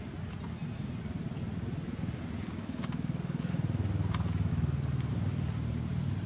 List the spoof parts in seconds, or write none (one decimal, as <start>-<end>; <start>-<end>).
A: 2.6-3.5; 4.5-5.1

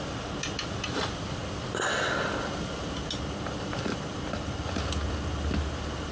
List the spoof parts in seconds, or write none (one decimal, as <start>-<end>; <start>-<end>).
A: none

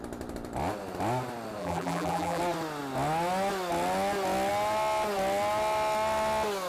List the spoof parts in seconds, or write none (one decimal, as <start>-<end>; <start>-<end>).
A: 1.6-2.4

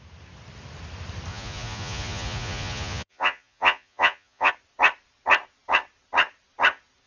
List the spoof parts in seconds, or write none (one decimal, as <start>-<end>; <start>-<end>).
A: 1.3-4.5

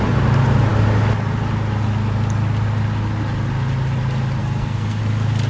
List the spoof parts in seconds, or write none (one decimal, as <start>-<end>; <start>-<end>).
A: 4.4-5.0

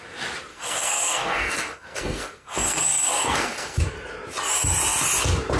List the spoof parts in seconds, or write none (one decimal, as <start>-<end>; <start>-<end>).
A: 0.5-3.8

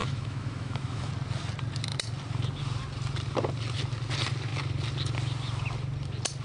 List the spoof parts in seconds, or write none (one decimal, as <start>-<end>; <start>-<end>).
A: 0.0-1.1

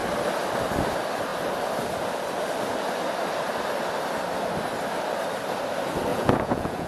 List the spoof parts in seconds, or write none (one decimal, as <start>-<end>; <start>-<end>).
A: 6.1-6.9